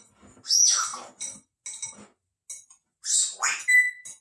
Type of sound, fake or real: real